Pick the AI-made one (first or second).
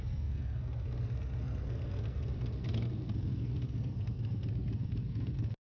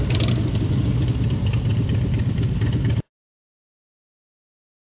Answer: first